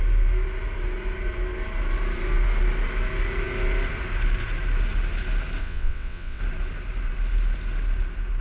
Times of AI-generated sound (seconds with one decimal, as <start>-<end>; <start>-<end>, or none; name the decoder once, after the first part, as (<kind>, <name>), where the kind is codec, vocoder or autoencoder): 5.6-6.4 (vocoder, WaveNeXt)